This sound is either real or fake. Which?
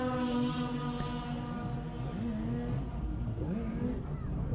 real